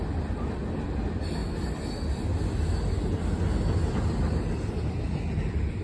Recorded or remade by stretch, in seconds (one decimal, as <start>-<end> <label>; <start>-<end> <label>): 0.0-1.4 remade; 1.4-4.9 recorded; 4.9-5.8 remade